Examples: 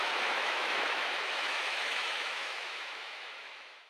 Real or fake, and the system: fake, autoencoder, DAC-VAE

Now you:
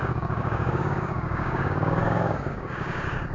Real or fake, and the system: fake, codec, DAC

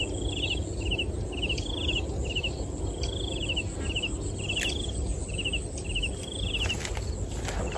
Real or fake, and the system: real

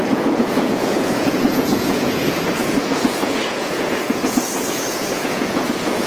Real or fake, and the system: fake, vocoder, Vocos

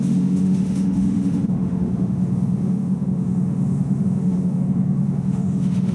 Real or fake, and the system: fake, autoencoder, DAC-VAE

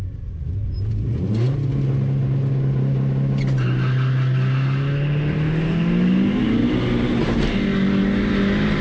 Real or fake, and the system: real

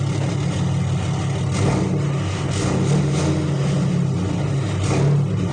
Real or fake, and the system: real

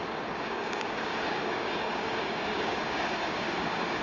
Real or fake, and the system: fake, codec, DAC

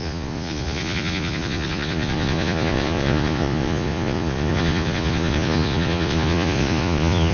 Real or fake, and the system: fake, vocoder, Vocos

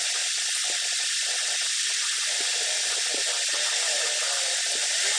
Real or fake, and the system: real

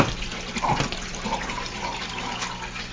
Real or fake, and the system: real